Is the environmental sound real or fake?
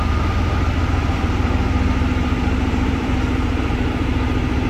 fake